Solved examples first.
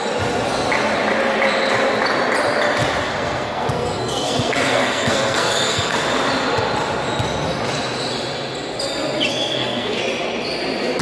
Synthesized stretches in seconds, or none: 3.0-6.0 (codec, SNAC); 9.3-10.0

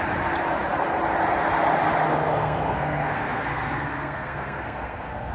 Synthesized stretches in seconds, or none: 2.1-5.3 (codec, SNAC)

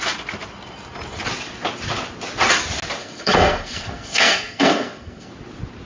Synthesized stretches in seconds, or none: 3.0-5.3 (codec, SNAC)